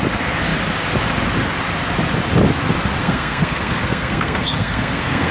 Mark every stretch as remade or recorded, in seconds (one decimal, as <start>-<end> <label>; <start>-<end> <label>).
0.0-3.0 recorded; 3.0-5.3 remade